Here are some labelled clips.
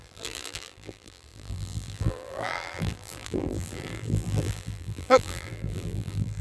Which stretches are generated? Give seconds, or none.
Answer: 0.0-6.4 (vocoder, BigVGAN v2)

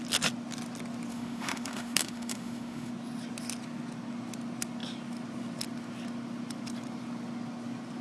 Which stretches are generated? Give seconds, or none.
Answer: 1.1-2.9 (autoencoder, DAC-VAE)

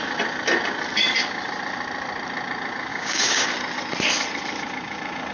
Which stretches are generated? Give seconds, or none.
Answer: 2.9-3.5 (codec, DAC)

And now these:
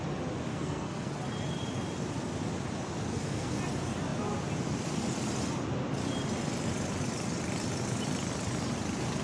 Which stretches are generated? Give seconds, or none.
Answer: 0.5-1.1 (codec, SNAC); 3.1-3.6

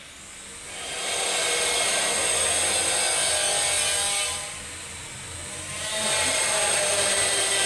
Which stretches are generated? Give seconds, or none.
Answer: 5.4-7.7 (vocoder, BigVGAN v2)

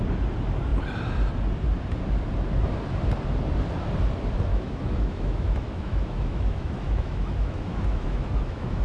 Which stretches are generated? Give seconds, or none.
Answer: 4.5-8.8 (autoencoder, DAC-VAE)

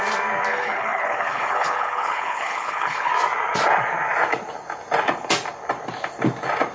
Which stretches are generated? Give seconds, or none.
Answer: 0.5-3.1 (codec, HILCodec)

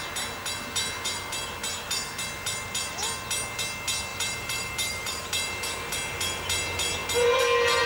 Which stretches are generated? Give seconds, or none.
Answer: 4.1-5.3 (vocoder, BigVGAN v2)